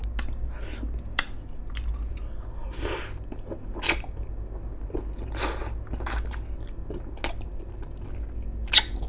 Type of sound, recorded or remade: recorded